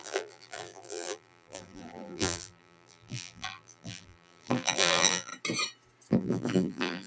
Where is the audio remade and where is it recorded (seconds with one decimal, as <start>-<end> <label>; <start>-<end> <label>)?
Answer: 0.0-5.3 remade; 5.3-6.1 recorded; 6.1-7.1 remade